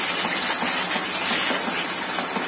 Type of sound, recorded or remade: recorded